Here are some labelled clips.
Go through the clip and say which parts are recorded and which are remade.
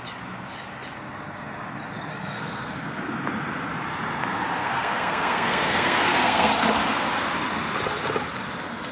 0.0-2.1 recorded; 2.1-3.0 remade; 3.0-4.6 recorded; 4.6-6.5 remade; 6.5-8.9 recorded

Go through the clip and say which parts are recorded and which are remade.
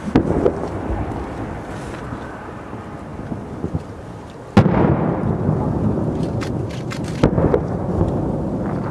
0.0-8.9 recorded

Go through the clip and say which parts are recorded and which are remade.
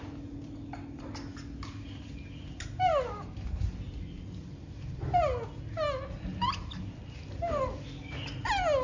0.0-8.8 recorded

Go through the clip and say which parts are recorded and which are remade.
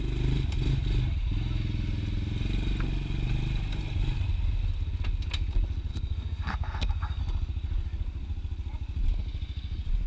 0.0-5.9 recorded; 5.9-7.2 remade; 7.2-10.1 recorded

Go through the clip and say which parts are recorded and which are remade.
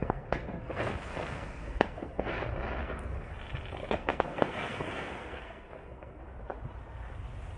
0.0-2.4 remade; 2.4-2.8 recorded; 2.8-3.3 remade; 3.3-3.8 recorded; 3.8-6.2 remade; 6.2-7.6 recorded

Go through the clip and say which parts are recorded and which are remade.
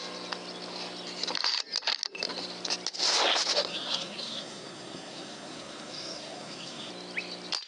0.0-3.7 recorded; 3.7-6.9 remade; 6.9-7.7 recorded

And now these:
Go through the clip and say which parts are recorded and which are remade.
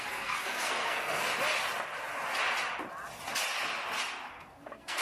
0.0-1.3 remade; 1.3-4.3 recorded; 4.3-5.0 remade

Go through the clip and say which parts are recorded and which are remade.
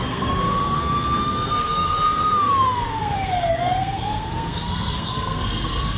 0.0-6.0 remade